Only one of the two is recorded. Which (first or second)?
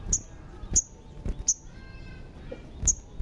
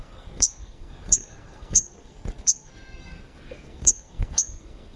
first